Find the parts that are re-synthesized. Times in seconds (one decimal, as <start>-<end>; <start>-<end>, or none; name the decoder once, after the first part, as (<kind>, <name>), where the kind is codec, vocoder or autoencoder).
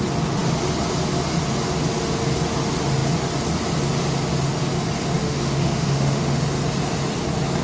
5.2-6.4 (autoencoder, DAC-VAE)